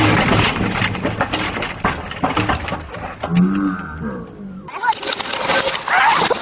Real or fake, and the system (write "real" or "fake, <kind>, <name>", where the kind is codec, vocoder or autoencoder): real